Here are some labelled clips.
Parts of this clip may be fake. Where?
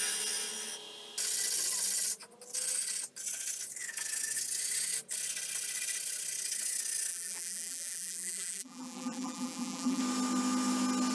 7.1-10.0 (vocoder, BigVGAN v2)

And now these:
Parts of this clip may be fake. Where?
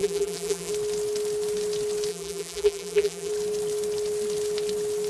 0.0-0.7 (vocoder, BigVGAN v2); 2.1-3.3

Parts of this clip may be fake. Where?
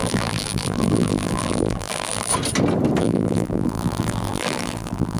0.0-2.3 (vocoder, BigVGAN v2); 3.0-5.2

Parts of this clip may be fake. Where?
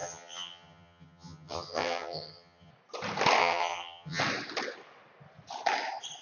0.0-2.7 (vocoder, HiFi-GAN); 3.4-4.2